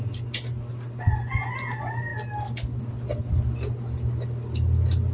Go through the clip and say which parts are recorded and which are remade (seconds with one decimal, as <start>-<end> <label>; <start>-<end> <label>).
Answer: 0.0-5.1 recorded